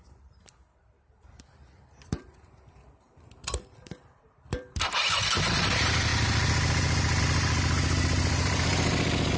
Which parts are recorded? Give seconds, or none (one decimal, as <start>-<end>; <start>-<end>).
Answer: 6.1-7.2